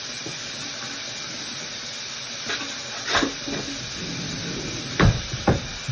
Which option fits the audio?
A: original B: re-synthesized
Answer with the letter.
B